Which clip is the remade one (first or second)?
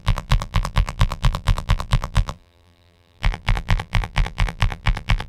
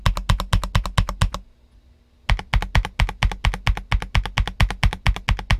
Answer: first